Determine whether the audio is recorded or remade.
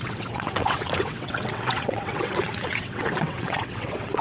remade